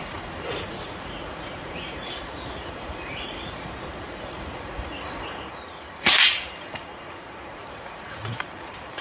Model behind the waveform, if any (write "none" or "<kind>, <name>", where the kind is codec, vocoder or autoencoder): vocoder, Vocos